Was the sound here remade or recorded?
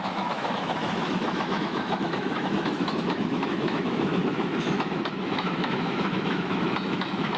remade